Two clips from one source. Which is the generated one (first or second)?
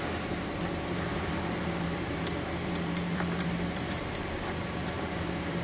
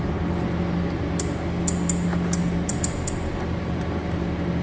first